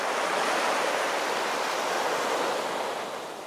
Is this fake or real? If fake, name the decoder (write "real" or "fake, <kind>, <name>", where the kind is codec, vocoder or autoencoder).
real